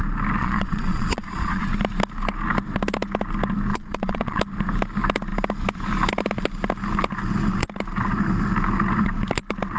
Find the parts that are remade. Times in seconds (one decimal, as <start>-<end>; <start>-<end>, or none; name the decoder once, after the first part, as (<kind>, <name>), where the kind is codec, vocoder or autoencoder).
0.4-1.7 (vocoder, Vocos); 3.7-4.4